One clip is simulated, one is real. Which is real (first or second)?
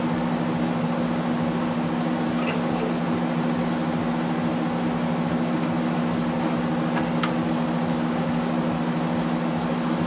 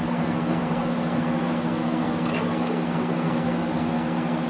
first